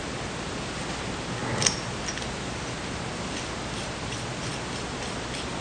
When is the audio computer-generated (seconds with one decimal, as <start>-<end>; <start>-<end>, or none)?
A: none